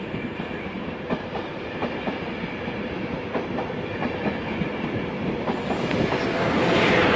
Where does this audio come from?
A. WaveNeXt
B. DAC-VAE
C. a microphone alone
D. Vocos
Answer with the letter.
C